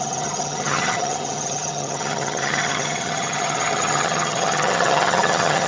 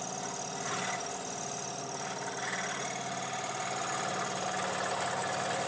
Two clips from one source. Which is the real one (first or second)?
second